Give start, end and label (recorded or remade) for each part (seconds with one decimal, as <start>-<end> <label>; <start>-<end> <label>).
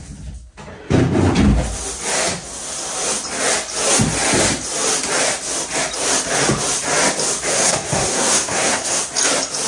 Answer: 0.0-7.5 recorded; 7.5-9.0 remade; 9.0-9.7 recorded